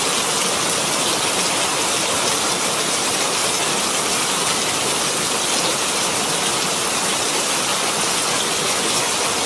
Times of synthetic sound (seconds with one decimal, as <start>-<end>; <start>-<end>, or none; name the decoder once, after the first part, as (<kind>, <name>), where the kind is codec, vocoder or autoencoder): 7.7-9.1 (vocoder, Vocos)